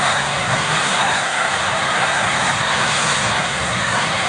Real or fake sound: fake